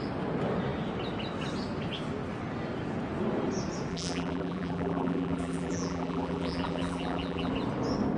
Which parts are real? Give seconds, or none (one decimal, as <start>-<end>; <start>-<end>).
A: 0.0-3.9; 7.5-8.2